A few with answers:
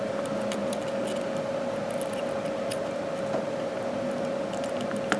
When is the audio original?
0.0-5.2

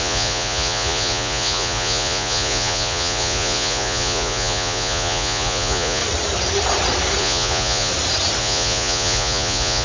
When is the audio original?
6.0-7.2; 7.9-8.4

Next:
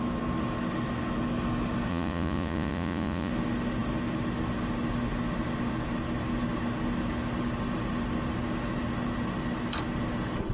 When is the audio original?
0.0-1.9; 3.3-10.5

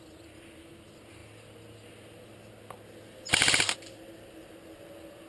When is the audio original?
0.0-5.3

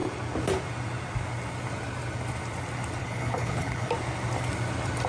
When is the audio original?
0.0-3.0; 3.9-5.1

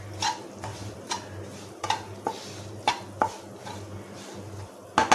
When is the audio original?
0.0-0.7; 2.9-5.1

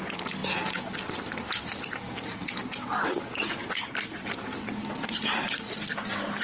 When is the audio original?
0.0-6.4